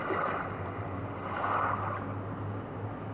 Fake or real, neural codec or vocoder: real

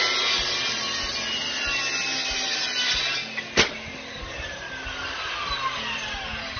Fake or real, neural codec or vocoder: real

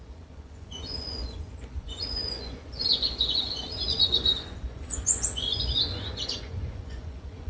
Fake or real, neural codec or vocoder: fake, vocoder, Vocos